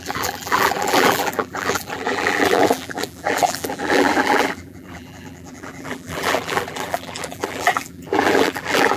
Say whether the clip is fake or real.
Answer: fake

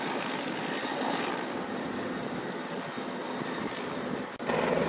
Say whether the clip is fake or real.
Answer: real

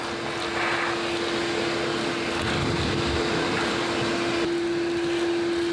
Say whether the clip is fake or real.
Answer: real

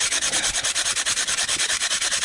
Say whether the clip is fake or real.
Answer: real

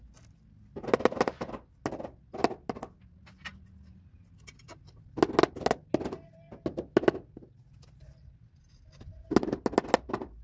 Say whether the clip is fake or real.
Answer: real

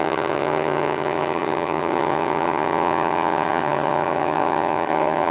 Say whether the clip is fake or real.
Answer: fake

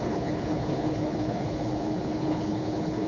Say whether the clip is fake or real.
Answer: fake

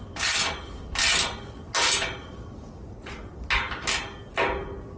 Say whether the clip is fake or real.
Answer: real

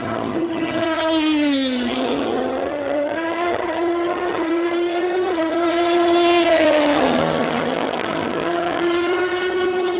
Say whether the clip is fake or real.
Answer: fake